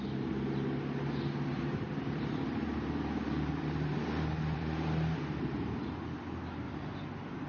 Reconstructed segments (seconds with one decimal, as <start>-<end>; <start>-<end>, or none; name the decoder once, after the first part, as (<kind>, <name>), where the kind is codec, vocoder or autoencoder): 1.5-6.0 (vocoder, BigVGAN v2)